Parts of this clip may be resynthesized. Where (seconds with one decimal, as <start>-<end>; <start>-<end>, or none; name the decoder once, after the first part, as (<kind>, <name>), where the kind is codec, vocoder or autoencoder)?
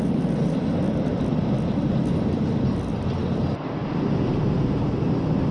none